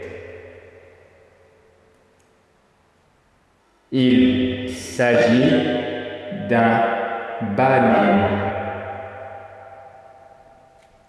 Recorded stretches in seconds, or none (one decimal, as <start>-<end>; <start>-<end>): 0.0-3.6; 5.5-7.9; 8.5-11.1